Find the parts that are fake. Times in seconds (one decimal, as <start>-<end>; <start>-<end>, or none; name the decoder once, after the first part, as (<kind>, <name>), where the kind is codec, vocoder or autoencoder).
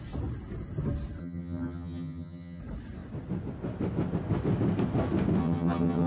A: 1.2-2.6 (vocoder, HiFi-GAN); 5.4-6.1